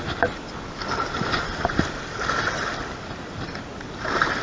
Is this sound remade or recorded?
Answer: recorded